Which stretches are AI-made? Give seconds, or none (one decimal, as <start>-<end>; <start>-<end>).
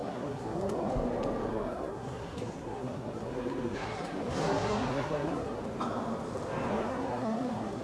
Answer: 0.0-0.9; 1.5-5.6; 6.7-7.8